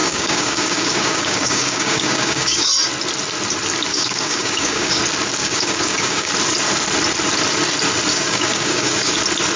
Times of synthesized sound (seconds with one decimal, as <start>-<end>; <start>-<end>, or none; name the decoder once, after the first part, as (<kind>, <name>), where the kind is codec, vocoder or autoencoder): 0.0-2.7 (codec, DAC); 3.9-5.0; 5.4-6.3; 8.1-9.2